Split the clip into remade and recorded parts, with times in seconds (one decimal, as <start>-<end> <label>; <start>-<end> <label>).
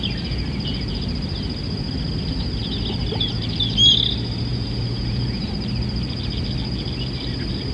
0.0-4.5 recorded; 4.5-5.5 remade; 5.5-7.7 recorded